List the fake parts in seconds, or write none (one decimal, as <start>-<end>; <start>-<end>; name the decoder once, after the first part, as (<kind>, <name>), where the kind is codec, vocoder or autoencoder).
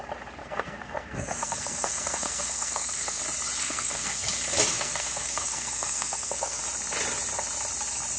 0.4-3.2 (codec, SNAC); 3.6-4.3; 4.7-6.6